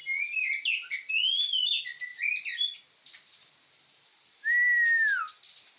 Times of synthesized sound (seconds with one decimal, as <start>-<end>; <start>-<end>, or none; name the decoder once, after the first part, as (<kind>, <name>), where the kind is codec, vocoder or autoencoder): none